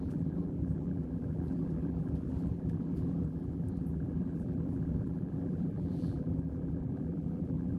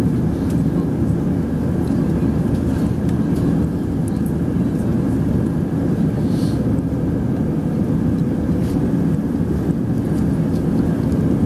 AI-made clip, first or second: first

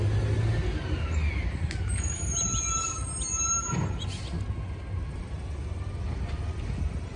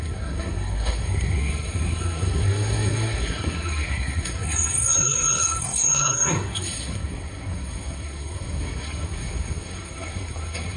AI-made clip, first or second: second